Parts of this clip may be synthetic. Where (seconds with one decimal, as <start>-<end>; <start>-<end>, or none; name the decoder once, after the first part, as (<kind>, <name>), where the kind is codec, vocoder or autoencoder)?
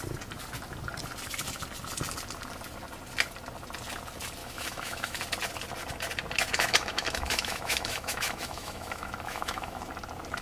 4.4-5.2 (autoencoder, DAC-VAE); 6.5-9.9